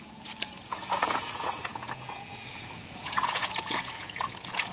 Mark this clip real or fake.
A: fake